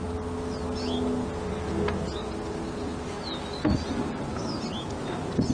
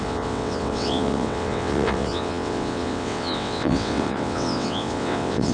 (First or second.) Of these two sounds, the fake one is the second